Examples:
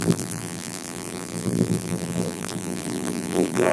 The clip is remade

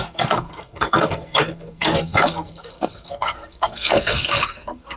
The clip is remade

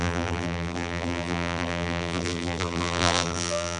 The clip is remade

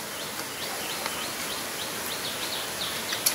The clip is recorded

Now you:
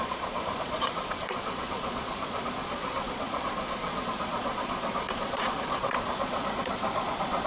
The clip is remade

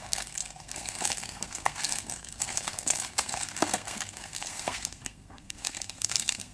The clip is remade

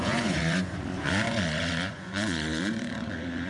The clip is remade